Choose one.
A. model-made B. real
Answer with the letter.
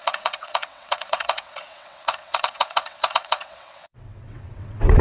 A